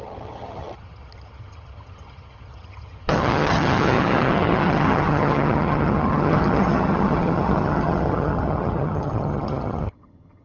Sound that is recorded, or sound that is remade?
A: remade